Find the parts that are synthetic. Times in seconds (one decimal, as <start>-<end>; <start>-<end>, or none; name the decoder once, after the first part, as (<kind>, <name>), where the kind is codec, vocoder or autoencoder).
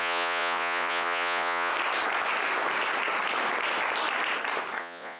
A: 0.0-1.7 (vocoder, Vocos); 4.8-5.2